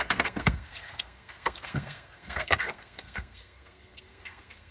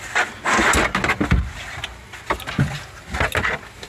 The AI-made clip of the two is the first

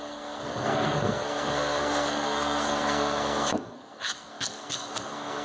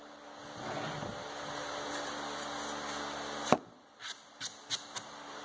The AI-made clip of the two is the first